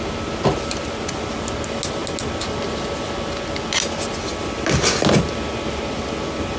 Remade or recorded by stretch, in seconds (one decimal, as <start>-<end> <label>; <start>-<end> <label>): 0.0-6.6 recorded